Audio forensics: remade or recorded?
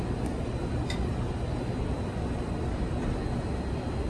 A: recorded